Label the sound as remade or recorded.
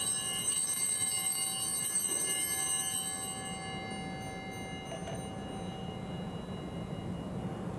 recorded